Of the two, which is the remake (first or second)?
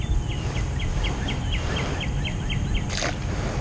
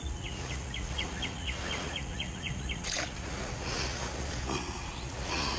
second